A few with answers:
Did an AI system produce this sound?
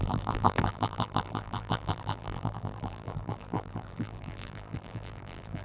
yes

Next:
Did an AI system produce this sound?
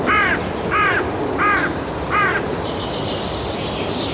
no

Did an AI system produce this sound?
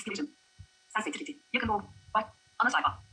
yes